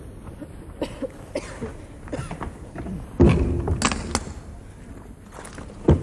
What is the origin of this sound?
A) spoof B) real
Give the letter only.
B